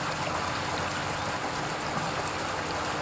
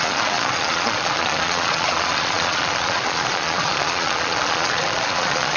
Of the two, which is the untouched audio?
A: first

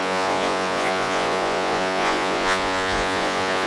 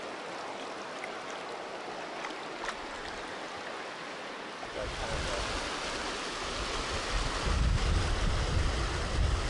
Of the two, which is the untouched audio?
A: second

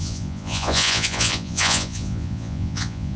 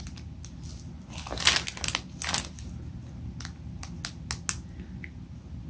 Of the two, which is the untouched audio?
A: second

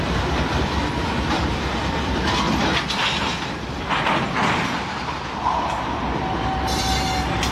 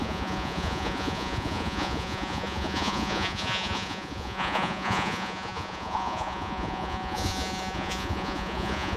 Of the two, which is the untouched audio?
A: first